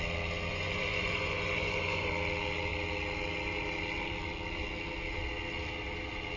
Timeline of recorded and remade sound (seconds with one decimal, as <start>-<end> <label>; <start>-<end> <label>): 0.0-0.5 recorded; 0.5-2.1 remade; 2.1-6.4 recorded